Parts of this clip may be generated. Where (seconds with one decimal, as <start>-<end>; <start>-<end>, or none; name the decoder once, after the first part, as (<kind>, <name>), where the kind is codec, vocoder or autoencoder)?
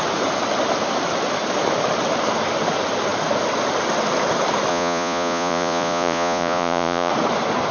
4.7-7.1 (vocoder, Vocos)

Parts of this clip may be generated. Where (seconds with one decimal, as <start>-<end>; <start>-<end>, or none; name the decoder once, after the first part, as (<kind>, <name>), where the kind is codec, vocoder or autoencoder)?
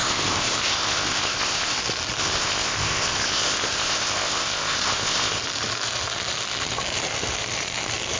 0.0-1.8 (codec, ZipCodec); 2.2-5.4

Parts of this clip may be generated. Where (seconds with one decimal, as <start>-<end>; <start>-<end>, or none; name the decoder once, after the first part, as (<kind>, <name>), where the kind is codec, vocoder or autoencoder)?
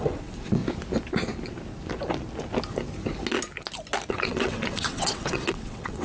0.0-0.6 (vocoder, WaveNeXt); 4.1-6.0